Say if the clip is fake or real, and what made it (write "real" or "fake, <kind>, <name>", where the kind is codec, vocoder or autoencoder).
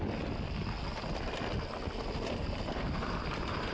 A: real